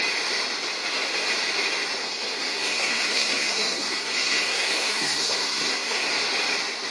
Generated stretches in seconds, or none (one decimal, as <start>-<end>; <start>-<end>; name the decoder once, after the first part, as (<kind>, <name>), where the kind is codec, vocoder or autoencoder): 2.0-6.1 (codec, SNAC)